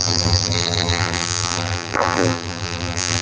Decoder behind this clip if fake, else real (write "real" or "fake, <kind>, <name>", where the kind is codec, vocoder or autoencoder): fake, vocoder, BigVGAN v2